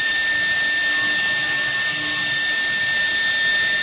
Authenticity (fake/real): real